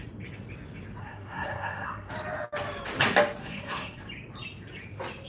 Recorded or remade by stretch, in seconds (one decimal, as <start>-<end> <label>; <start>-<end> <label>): 0.0-1.0 recorded; 1.0-2.1 remade; 2.1-3.4 recorded; 3.4-4.0 remade; 4.0-5.3 recorded